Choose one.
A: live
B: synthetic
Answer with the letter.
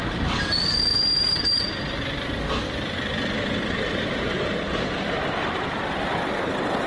A